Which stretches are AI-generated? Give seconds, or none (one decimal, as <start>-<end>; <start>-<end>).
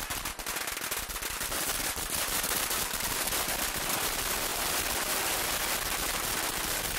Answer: none